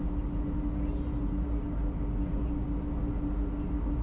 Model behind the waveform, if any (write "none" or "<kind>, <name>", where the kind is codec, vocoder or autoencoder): none